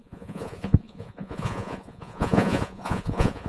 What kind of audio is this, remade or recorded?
remade